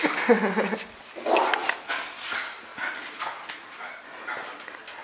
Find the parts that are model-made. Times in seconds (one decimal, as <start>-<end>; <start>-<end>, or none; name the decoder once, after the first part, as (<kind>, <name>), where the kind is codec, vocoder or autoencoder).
none